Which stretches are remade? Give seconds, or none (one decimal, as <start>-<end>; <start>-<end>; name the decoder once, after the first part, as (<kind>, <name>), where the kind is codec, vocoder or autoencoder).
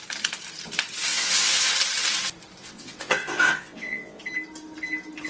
1.1-1.7 (vocoder, WaveNeXt); 2.6-4.2